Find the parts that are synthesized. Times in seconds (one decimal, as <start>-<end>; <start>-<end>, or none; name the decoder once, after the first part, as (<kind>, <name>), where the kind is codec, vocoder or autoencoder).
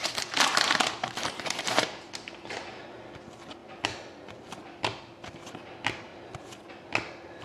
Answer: 0.0-2.8 (vocoder, BigVGAN v2)